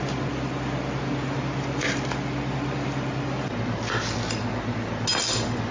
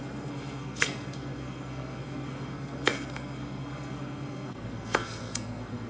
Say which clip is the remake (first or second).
second